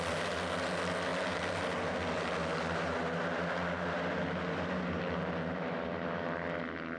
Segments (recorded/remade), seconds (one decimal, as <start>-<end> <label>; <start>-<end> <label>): 0.0-7.0 recorded

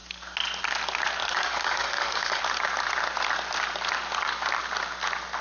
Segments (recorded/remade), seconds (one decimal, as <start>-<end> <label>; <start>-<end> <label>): 0.0-1.2 recorded; 1.2-2.4 remade; 2.4-5.4 recorded

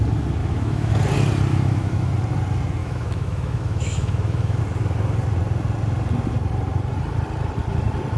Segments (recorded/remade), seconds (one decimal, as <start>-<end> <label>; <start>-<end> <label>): 0.0-0.4 recorded; 0.4-0.9 remade; 0.9-1.5 recorded; 1.5-2.1 remade; 2.1-2.8 recorded; 2.8-4.6 remade; 4.6-8.2 recorded

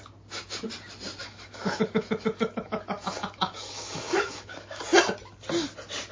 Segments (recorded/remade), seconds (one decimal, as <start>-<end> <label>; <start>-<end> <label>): 0.0-1.2 recorded; 1.2-4.8 remade; 4.8-6.1 recorded

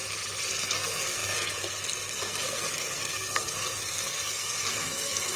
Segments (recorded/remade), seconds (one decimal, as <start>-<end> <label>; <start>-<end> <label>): 0.0-0.5 recorded; 0.5-5.4 remade

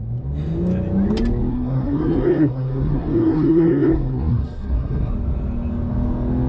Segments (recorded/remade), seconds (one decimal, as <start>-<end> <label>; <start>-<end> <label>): 0.0-1.5 recorded; 1.5-5.1 remade; 5.1-6.5 recorded

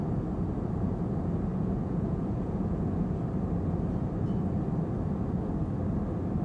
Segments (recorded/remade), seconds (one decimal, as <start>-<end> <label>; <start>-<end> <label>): 0.0-1.5 recorded; 1.5-3.1 remade; 3.1-6.4 recorded

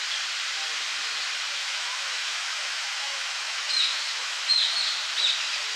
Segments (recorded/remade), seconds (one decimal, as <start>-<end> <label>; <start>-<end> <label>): 0.0-1.6 recorded; 1.6-4.4 remade; 4.4-5.8 recorded